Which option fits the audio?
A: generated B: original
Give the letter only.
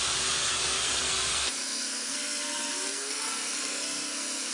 A